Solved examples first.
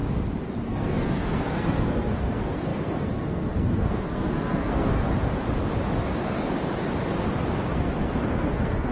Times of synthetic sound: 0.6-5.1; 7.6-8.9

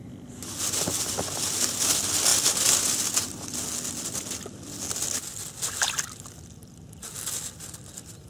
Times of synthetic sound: none

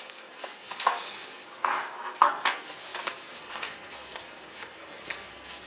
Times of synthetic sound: 0.0-5.7